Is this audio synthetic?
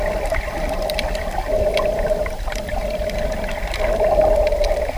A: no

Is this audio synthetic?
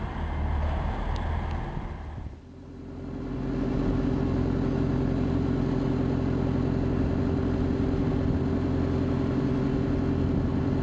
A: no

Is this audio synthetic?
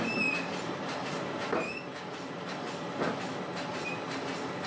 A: yes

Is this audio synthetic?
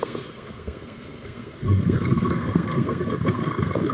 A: yes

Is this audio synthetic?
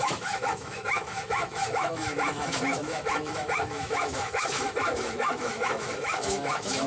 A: yes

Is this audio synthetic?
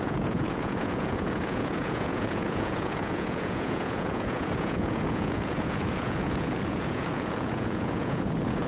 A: yes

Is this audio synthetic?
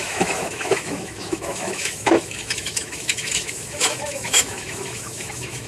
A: yes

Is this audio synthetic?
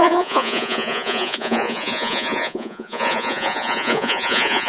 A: yes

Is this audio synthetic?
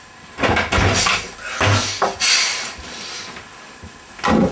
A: no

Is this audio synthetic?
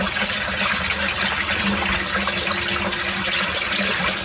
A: no